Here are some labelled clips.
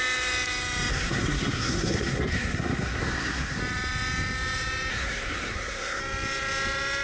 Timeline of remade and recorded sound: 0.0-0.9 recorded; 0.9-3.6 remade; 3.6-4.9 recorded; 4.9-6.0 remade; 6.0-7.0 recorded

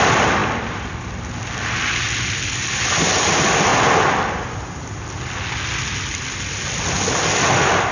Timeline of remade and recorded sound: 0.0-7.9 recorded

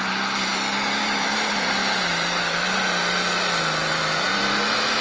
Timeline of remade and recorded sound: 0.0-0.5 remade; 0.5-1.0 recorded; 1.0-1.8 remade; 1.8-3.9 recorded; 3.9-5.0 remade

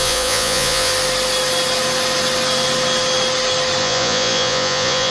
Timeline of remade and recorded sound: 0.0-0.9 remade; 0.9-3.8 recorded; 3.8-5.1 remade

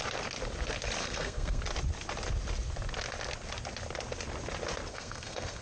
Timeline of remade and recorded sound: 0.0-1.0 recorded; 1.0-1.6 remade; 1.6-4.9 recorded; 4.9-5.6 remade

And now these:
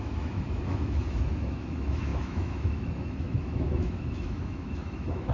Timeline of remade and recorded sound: 0.0-5.3 remade

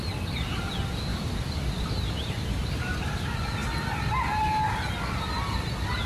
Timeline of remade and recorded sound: 0.0-1.1 recorded; 1.1-2.9 remade; 2.9-6.1 recorded